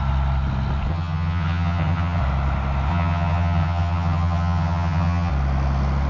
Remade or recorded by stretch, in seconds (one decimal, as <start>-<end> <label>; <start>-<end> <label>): 0.0-0.9 recorded; 0.9-2.2 remade; 2.2-2.9 recorded; 2.9-5.3 remade; 5.3-6.1 recorded